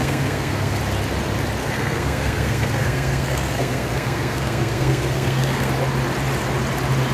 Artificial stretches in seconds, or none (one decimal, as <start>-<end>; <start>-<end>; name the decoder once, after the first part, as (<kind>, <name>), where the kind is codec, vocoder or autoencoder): 0.0-0.8 (codec, SNAC); 1.6-5.7